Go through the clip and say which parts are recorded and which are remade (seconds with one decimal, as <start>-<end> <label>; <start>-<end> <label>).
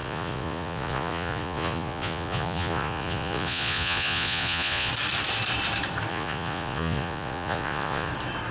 0.0-4.9 remade; 4.9-6.1 recorded; 6.1-8.1 remade; 8.1-8.5 recorded